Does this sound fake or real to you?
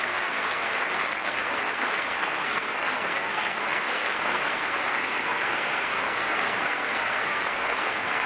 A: fake